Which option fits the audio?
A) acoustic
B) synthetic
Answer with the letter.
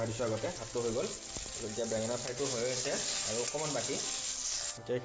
A